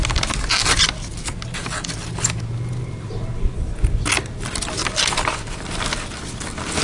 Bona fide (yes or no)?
yes